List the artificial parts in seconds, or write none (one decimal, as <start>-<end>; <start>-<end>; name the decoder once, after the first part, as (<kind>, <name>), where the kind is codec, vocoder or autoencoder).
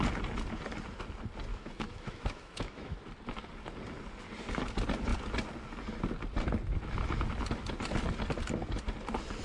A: 1.5-3.0 (autoencoder, DAC-VAE)